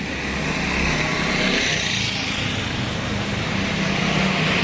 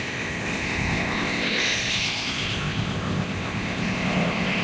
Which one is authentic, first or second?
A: first